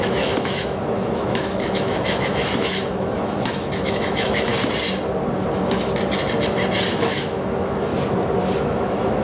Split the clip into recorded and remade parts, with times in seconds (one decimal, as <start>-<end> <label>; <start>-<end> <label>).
0.0-4.5 remade; 4.5-6.9 recorded; 6.9-7.9 remade; 7.9-8.6 recorded; 8.6-9.2 remade